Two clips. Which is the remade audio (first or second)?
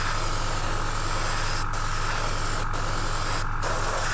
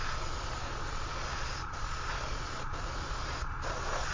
second